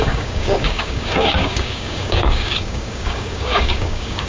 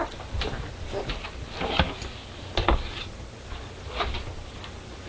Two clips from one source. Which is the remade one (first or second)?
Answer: first